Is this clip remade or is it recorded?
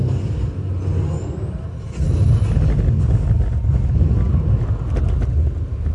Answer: recorded